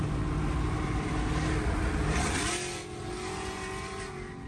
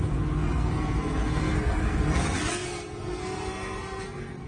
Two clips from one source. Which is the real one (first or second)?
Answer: first